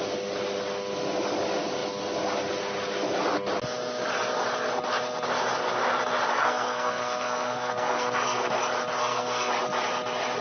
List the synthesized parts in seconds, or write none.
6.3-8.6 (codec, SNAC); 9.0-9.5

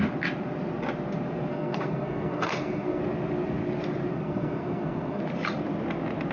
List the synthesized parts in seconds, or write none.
1.5-3.0 (codec, SNAC); 4.1-5.2